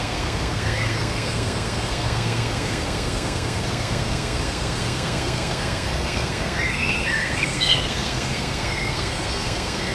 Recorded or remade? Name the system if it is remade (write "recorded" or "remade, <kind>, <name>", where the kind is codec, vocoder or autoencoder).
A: remade, codec, SNAC